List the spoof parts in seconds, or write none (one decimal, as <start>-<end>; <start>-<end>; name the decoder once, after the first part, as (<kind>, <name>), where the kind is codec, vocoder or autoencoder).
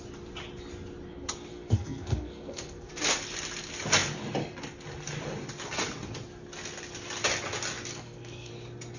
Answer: 1.5-2.9 (codec, SNAC); 7.9-8.5